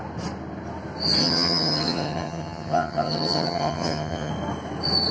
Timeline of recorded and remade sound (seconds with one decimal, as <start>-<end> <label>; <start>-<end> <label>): 0.0-1.2 recorded; 1.2-4.3 remade; 4.3-5.1 recorded